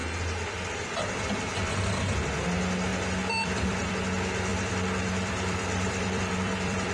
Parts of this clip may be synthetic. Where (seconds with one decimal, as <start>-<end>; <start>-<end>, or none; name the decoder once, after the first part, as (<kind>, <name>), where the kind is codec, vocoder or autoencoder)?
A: 0.0-1.2 (vocoder, BigVGAN v2); 2.9-3.9; 4.5-6.9